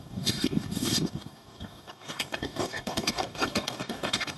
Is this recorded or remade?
remade